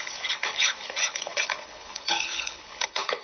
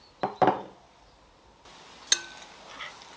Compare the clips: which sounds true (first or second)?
second